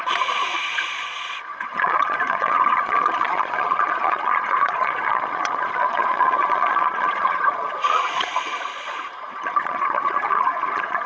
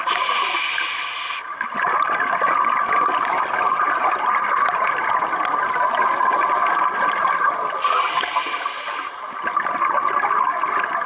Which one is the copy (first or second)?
first